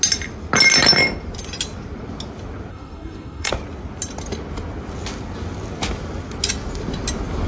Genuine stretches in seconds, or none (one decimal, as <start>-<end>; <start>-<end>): 0.0-2.7; 3.5-7.5